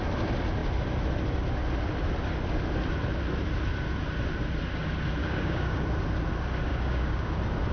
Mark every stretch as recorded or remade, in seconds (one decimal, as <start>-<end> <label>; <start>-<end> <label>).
0.0-5.2 recorded; 5.2-5.8 remade; 5.8-6.7 recorded; 6.7-7.3 remade; 7.3-7.7 recorded